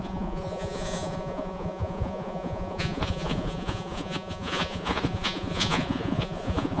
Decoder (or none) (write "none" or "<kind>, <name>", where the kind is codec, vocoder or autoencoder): vocoder, Vocos